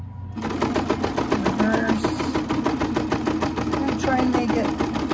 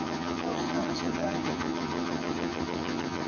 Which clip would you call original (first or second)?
first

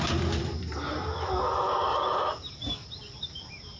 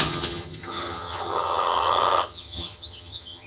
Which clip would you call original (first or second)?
first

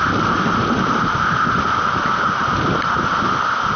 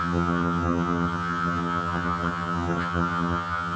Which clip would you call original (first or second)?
first